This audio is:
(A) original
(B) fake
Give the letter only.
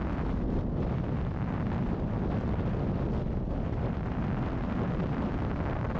A